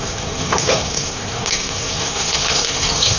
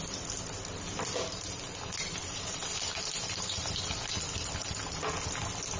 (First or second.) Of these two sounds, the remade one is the first